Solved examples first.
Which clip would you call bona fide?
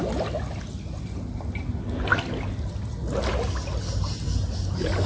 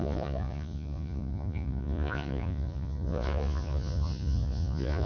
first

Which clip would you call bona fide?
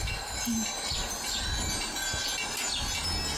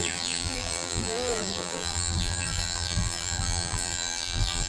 first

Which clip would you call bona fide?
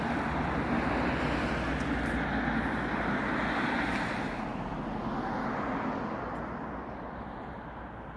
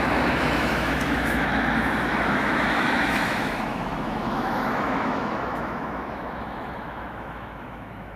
first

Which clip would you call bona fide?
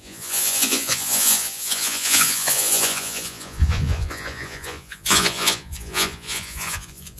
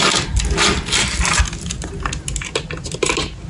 second